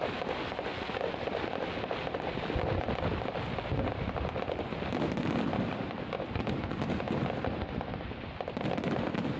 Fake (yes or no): no